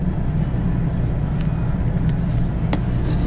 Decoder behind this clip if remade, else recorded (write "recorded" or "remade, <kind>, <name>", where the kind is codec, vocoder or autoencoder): recorded